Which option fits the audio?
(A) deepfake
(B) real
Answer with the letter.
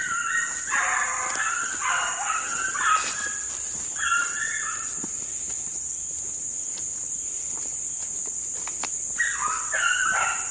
B